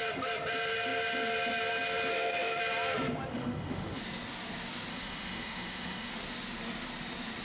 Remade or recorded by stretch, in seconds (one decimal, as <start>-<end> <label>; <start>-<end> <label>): 0.0-2.1 recorded; 2.1-2.6 remade; 2.6-3.3 recorded; 3.3-4.0 remade; 4.0-4.9 recorded; 4.9-6.1 remade; 6.1-7.4 recorded